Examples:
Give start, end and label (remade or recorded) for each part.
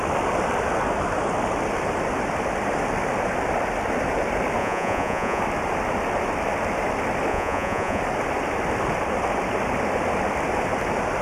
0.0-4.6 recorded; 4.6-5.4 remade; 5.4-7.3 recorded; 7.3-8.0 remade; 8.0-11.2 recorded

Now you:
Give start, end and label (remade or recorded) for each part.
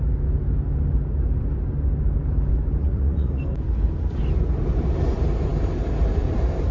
0.0-2.8 recorded; 2.8-3.4 remade; 3.4-6.7 recorded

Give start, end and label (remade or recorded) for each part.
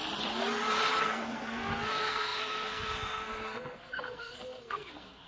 0.0-1.0 recorded; 1.0-5.3 remade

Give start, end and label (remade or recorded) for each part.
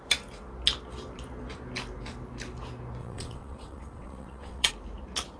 0.0-3.0 recorded; 3.0-4.7 remade; 4.7-5.4 recorded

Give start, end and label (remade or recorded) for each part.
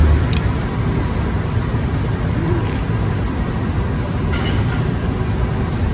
0.0-5.9 recorded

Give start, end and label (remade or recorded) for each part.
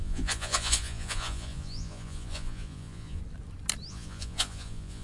0.0-3.2 remade; 3.2-3.9 recorded; 3.9-5.0 remade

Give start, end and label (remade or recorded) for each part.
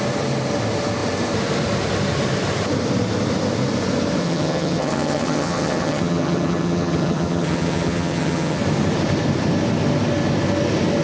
0.0-4.2 recorded; 4.2-8.6 remade; 8.6-11.0 recorded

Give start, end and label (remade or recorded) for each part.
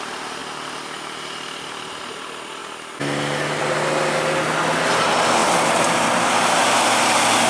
0.0-0.4 recorded; 0.4-2.0 remade; 2.0-5.4 recorded; 5.4-6.6 remade; 6.6-7.5 recorded